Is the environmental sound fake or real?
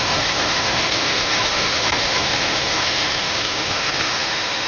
fake